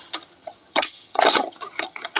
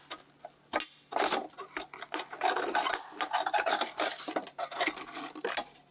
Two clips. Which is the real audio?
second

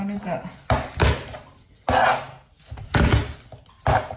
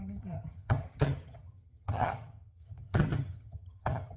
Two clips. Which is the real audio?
first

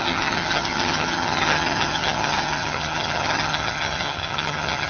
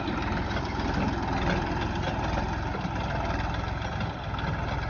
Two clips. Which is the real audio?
second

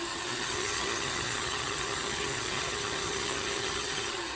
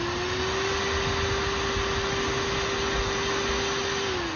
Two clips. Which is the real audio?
second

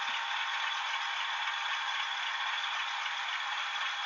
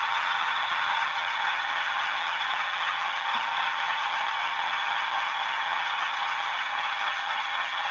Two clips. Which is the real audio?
first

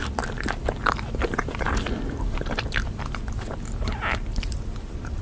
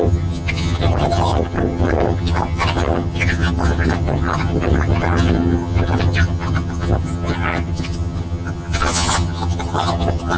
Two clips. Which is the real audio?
first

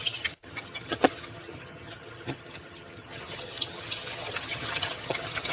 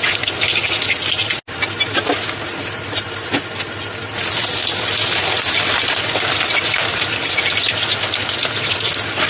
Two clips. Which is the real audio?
second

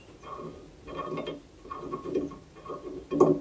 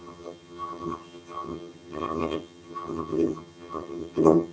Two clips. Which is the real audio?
first